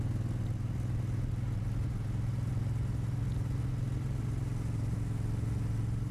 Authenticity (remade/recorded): recorded